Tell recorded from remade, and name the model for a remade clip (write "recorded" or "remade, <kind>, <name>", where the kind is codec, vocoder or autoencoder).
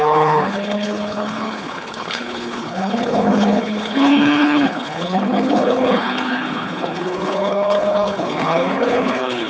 remade, codec, HILCodec